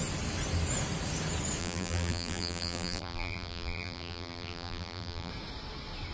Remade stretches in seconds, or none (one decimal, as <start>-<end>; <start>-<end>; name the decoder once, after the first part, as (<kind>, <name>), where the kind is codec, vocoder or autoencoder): 1.6-5.3 (vocoder, BigVGAN v2)